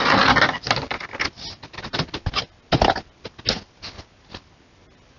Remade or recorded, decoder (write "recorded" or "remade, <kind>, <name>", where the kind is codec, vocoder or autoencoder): recorded